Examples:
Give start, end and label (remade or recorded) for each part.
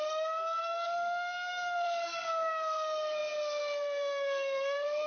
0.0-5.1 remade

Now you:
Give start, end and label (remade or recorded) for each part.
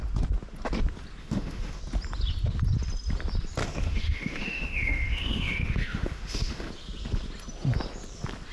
0.0-1.2 recorded; 1.2-1.8 remade; 1.8-3.6 recorded; 3.6-6.7 remade; 6.7-8.5 recorded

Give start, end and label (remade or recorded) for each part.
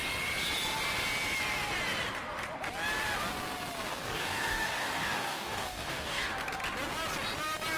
0.0-3.9 recorded; 3.9-6.3 remade; 6.3-7.8 recorded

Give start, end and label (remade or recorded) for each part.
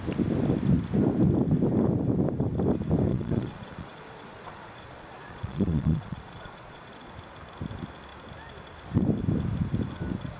0.0-3.1 recorded; 3.1-7.1 remade; 7.1-10.4 recorded